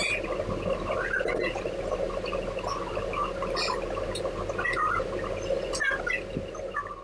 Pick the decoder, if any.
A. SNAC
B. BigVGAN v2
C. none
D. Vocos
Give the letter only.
C